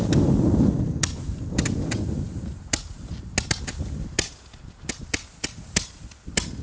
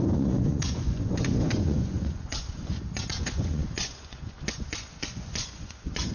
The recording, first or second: first